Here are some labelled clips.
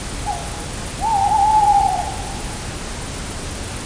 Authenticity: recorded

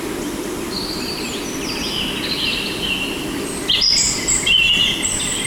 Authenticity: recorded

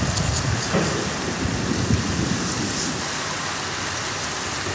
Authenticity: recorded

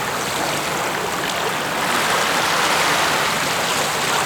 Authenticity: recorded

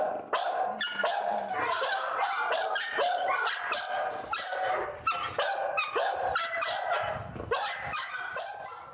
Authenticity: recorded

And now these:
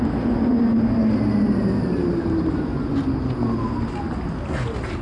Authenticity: recorded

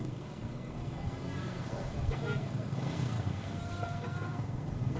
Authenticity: remade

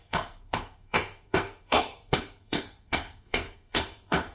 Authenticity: remade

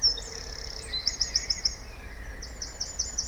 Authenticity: recorded